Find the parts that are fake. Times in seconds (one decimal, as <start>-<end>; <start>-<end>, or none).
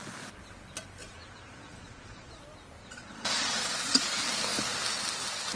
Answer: 1.0-2.4; 2.8-4.0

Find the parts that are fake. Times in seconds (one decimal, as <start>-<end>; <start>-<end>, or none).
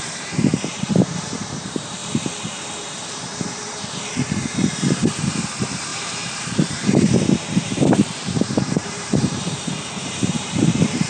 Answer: 0.0-2.0; 2.8-11.1